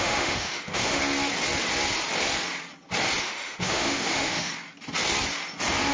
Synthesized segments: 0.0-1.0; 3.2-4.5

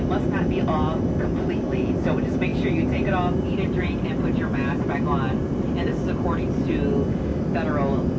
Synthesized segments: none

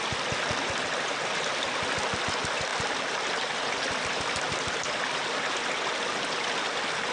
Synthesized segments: none

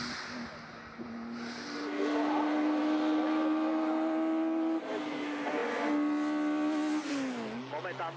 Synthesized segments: none

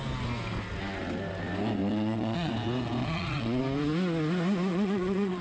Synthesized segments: 1.8-2.5; 3.0-3.6; 4.7-5.4

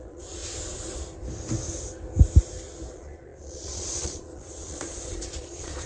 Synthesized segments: 0.0-0.4; 2.9-5.9